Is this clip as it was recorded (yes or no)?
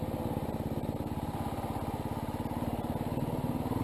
yes